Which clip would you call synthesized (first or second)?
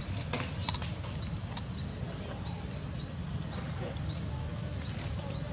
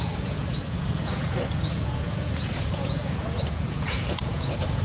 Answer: second